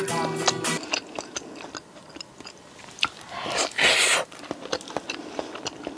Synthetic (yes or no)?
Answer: no